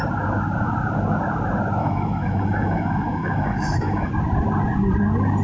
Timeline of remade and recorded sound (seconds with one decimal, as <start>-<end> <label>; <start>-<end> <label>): 0.0-1.8 recorded; 1.8-4.1 remade; 4.1-5.4 recorded